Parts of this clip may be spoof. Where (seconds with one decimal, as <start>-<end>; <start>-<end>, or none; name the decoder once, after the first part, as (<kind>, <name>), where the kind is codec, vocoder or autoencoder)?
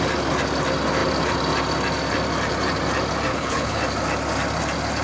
3.3-3.8 (codec, HILCodec)